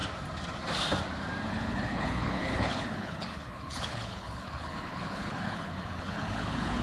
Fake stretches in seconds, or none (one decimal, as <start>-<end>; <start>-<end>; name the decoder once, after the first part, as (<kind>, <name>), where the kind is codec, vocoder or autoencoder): 1.5-6.8 (codec, HILCodec)